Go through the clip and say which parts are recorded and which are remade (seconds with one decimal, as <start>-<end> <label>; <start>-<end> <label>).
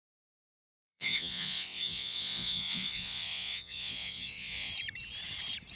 0.0-4.7 remade; 4.7-5.8 recorded